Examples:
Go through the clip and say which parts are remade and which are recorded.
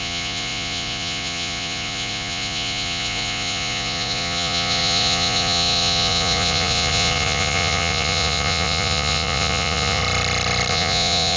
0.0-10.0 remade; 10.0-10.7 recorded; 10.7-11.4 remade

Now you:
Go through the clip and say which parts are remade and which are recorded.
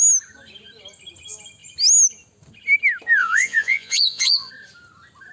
0.0-3.2 recorded; 3.2-4.5 remade; 4.5-5.3 recorded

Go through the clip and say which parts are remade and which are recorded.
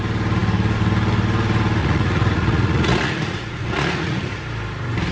0.0-1.8 recorded; 1.8-4.4 remade; 4.4-5.1 recorded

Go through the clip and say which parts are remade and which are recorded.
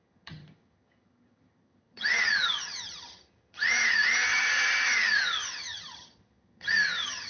0.0-7.3 remade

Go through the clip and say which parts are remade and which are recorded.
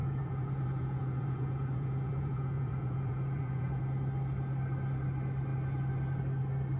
0.0-3.8 remade; 3.8-6.8 recorded